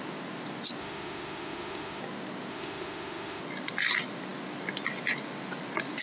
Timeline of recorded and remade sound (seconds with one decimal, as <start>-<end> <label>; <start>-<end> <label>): 0.0-0.8 recorded; 0.8-2.0 remade; 2.0-2.5 recorded; 2.5-3.4 remade; 3.4-6.0 recorded